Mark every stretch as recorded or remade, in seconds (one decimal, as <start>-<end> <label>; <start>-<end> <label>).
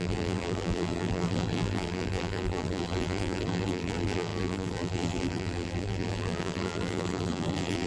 0.0-7.9 remade